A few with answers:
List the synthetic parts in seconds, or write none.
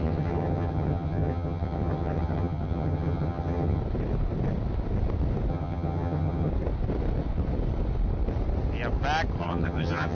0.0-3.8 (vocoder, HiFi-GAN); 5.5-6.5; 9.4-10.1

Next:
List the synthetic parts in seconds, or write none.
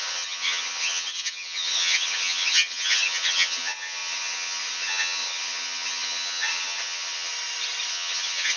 0.0-7.3 (vocoder, HiFi-GAN); 7.9-8.6